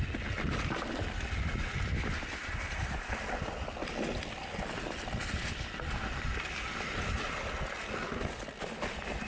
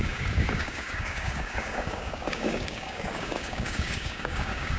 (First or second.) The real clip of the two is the first